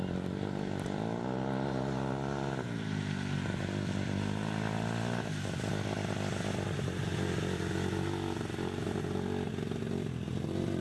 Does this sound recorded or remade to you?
recorded